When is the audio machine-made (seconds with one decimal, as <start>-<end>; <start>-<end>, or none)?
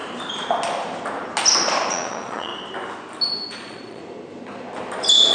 1.9-2.5; 3.5-4.0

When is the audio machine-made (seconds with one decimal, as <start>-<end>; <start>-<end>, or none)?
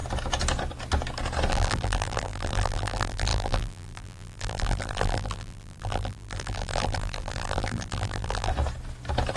1.5-8.5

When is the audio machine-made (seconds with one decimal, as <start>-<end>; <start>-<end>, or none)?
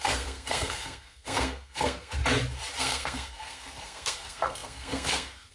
0.0-2.2; 2.8-5.5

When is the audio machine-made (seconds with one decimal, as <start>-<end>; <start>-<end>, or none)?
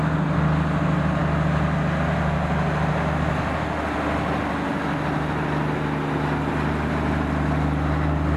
none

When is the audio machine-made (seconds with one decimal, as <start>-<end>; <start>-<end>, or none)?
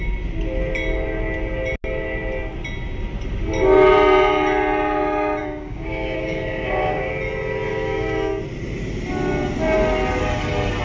5.4-7.1; 7.7-8.4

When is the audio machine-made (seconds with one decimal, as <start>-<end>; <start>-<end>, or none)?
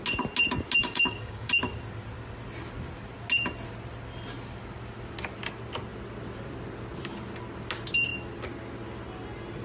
0.8-1.5